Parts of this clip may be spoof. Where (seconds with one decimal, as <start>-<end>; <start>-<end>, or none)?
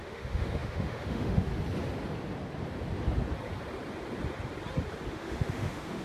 0.0-1.5; 5.1-6.0